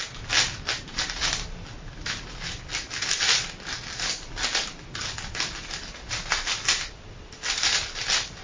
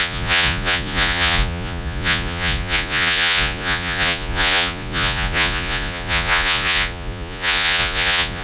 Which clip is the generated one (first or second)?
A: second